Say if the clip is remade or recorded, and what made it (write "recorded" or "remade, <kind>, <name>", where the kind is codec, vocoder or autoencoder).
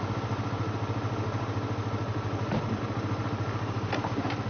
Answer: recorded